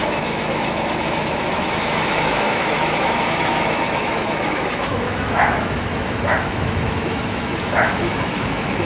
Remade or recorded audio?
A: remade